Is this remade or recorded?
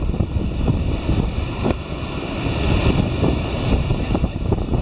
remade